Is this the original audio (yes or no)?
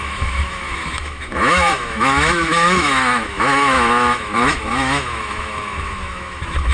no